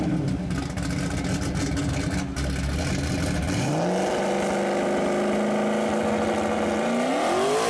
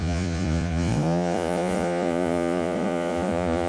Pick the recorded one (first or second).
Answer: first